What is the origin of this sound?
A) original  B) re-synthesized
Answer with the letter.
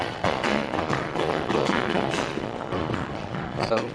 B